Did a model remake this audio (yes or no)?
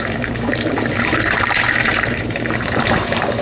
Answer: yes